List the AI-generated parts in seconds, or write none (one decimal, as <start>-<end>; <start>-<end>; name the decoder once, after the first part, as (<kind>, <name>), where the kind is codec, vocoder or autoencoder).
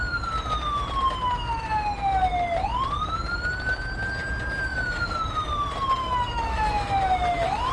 4.7-5.2 (autoencoder, DAC-VAE); 6.0-7.7